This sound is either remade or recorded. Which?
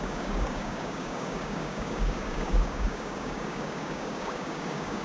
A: remade